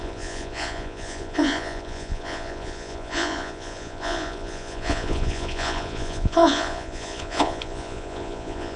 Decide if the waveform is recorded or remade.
remade